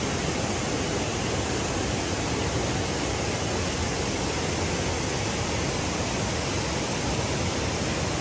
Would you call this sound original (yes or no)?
yes